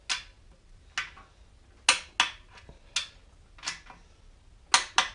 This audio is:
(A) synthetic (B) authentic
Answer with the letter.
B